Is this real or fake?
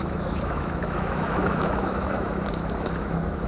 fake